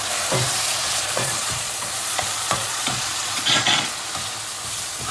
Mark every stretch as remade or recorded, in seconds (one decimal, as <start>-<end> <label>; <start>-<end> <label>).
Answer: 0.0-0.8 recorded; 0.8-3.9 remade; 3.9-5.1 recorded